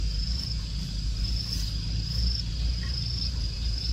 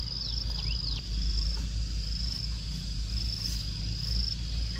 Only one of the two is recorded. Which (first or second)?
second